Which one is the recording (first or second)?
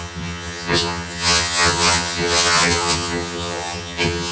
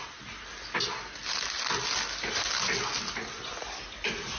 second